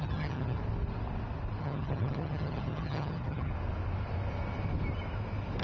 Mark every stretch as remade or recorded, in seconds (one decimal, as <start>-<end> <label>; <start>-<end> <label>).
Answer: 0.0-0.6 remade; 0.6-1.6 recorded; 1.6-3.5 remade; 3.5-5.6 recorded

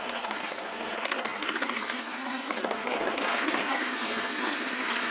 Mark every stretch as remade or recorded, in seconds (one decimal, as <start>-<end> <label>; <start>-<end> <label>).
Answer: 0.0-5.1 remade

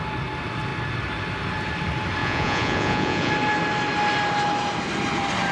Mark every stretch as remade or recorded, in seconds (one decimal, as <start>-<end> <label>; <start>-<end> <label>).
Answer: 0.0-2.2 recorded; 2.2-3.3 remade; 3.3-5.5 recorded

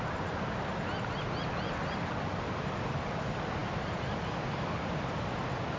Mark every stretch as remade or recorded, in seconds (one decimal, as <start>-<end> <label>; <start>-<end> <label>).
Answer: 0.0-3.6 recorded; 3.6-5.8 remade

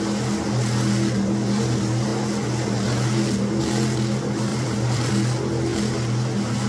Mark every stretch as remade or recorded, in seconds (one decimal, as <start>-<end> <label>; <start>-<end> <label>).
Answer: 0.0-4.5 recorded; 4.5-5.1 remade; 5.1-6.7 recorded

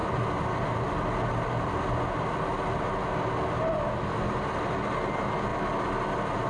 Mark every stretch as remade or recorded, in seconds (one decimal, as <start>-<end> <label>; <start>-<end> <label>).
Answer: 0.0-6.5 recorded